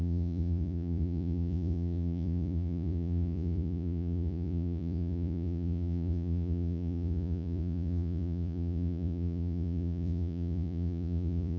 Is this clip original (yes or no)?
no